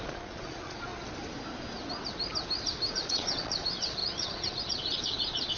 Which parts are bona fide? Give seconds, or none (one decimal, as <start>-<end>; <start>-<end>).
0.9-2.9